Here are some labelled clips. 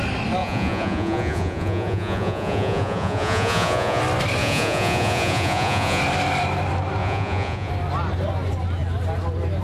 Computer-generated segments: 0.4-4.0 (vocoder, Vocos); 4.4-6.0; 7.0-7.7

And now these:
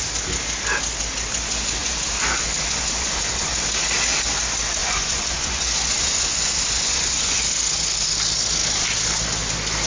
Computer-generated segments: 1.8-3.5 (vocoder, Vocos); 4.8-7.4

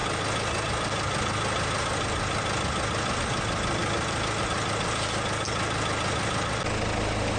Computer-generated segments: none